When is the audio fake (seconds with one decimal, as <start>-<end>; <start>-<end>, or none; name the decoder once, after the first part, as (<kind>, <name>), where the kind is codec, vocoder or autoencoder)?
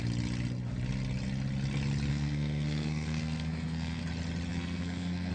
2.1-4.0 (codec, SNAC); 4.5-5.3